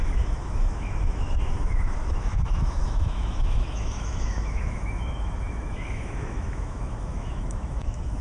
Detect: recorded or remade remade